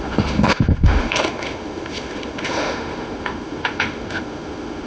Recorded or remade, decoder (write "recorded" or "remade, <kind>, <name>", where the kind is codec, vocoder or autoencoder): remade, autoencoder, DAC-VAE